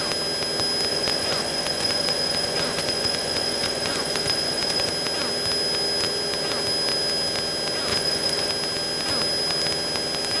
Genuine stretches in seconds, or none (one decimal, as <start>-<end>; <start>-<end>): 0.0-0.9; 4.9-7.9; 8.5-10.4